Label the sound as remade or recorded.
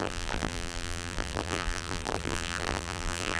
remade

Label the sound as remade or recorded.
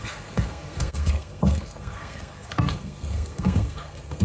remade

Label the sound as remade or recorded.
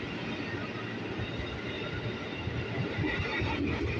recorded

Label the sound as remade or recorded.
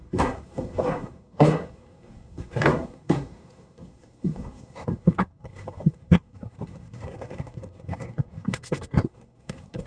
remade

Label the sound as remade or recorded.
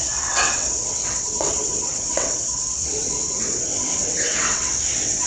remade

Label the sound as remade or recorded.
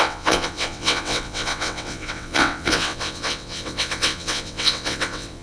remade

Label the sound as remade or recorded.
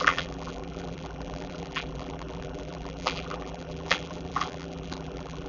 remade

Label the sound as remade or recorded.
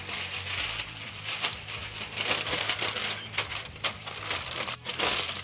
remade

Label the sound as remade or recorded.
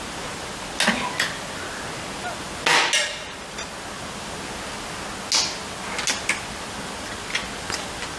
recorded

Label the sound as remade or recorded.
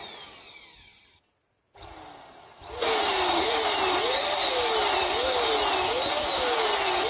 recorded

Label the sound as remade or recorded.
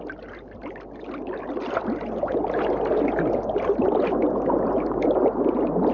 recorded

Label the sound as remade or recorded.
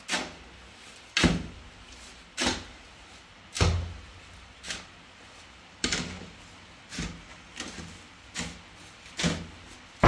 recorded